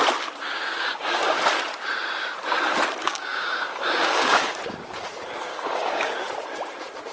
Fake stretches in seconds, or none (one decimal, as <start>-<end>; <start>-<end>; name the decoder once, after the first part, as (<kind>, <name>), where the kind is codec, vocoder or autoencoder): 0.8-1.4 (codec, DAC); 3.0-4.6; 5.5-6.1